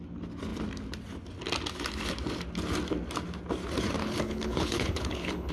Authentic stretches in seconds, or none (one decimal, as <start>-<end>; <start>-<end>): 0.0-4.0